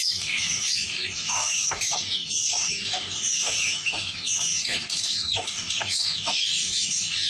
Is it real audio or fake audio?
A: fake